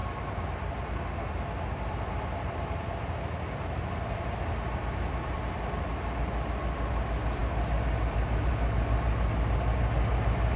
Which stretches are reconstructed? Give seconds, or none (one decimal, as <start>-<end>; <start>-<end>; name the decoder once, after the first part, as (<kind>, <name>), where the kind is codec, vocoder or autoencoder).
none